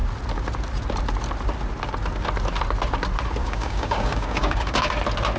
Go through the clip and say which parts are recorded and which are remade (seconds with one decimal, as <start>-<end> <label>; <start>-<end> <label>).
0.0-3.4 recorded; 3.4-4.9 remade; 4.9-5.4 recorded